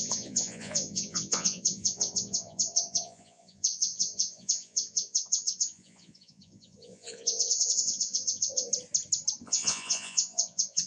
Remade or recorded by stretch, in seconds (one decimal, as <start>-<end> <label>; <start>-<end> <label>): 0.0-8.7 remade; 8.7-9.4 recorded; 9.4-10.9 remade